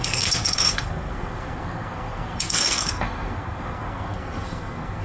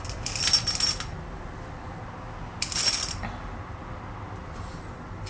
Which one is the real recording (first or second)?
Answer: second